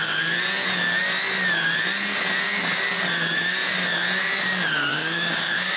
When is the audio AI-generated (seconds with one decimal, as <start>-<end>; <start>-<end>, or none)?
4.9-5.8